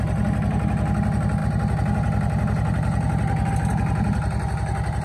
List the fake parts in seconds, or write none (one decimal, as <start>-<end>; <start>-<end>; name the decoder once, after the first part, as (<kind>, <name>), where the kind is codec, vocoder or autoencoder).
none

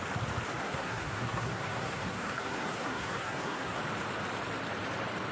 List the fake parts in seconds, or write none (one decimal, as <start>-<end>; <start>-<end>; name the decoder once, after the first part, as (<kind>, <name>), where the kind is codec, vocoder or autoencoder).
0.6-3.8 (codec, SNAC)

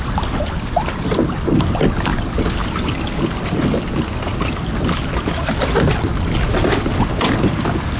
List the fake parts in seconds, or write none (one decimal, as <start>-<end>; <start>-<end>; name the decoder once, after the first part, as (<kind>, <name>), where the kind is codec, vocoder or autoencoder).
none

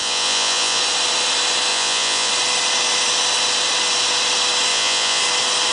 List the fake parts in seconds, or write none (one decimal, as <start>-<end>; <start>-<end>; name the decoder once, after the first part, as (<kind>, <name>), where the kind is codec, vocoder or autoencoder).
0.0-0.8 (vocoder, Vocos); 1.7-2.3; 4.7-5.2

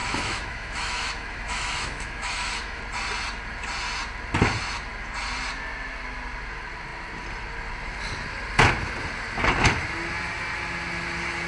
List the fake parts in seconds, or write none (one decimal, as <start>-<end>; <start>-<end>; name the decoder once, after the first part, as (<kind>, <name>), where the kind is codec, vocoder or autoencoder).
0.0-2.8 (autoencoder, DAC-VAE)

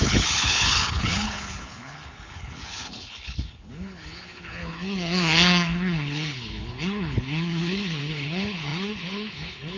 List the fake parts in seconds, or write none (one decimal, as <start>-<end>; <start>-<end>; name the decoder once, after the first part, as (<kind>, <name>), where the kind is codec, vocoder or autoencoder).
0.0-9.8 (codec, HILCodec)

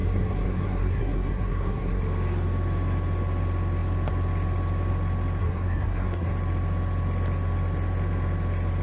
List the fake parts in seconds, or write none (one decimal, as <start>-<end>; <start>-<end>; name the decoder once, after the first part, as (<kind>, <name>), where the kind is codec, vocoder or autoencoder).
0.0-2.0 (codec, SNAC); 5.4-6.3